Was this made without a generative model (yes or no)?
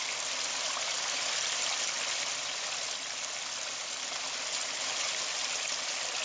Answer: yes